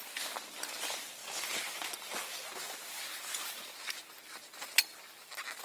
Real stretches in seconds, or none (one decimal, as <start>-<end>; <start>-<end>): 0.0-5.6